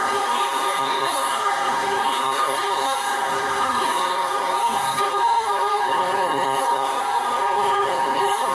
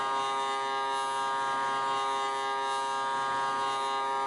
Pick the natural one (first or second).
second